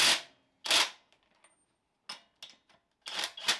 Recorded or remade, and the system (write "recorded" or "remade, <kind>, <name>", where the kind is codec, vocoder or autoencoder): recorded